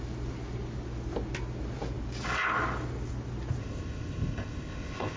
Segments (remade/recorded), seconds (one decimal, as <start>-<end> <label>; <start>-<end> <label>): 0.0-3.6 recorded; 3.6-5.2 remade